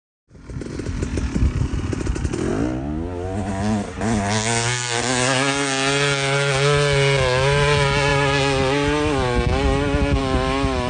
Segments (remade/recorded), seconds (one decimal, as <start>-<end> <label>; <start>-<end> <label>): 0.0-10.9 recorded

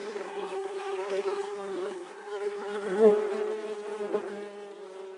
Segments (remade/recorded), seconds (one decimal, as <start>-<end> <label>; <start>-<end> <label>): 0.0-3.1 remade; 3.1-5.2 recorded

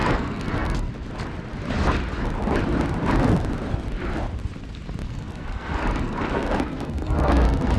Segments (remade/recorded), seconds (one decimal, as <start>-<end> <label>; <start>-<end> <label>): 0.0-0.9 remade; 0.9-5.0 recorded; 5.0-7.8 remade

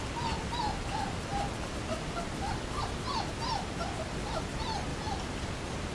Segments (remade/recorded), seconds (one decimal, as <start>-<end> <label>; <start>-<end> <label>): 0.0-5.9 recorded

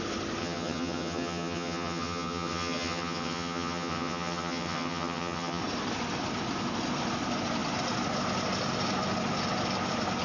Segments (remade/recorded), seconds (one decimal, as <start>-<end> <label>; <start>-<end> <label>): 0.0-0.4 recorded; 0.4-5.6 remade; 5.6-10.2 recorded

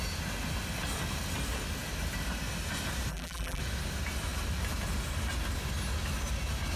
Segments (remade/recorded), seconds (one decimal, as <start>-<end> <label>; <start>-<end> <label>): 0.0-3.1 recorded; 3.1-3.6 remade; 3.6-6.8 recorded